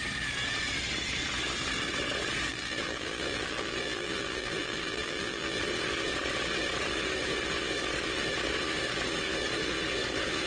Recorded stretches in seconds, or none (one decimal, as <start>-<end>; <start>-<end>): 0.0-2.5; 5.6-10.5